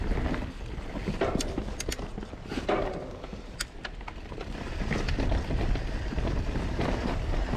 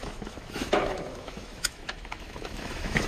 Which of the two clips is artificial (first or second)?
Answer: second